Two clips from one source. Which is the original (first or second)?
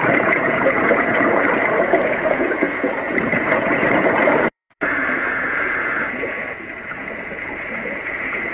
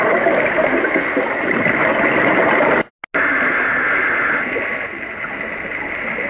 second